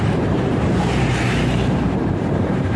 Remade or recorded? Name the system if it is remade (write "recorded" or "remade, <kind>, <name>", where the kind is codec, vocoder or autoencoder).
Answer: remade, vocoder, BigVGAN v2